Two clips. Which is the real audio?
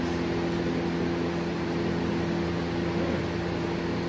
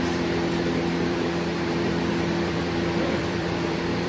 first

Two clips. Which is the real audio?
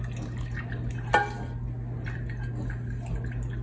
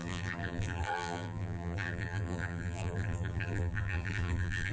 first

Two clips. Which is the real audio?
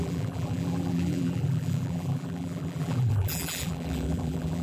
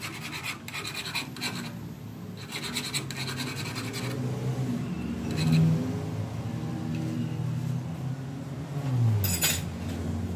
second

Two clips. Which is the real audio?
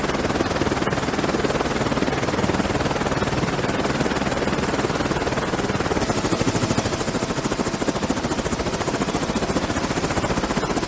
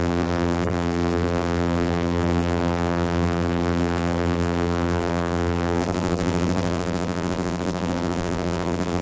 first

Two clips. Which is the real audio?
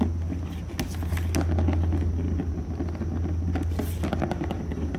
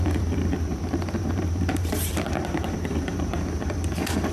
first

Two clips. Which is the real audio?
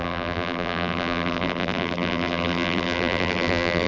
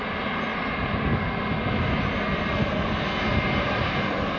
second